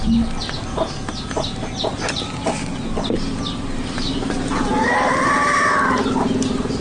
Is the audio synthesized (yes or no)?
no